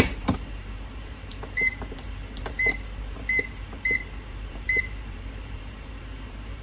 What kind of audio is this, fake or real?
fake